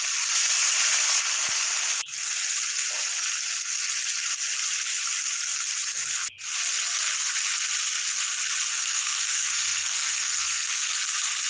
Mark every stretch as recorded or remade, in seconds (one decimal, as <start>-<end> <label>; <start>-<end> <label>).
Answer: 0.0-8.7 recorded; 8.7-10.9 remade; 10.9-11.5 recorded